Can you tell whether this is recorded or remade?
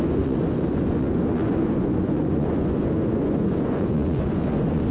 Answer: remade